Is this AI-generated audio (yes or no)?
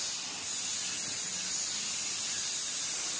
no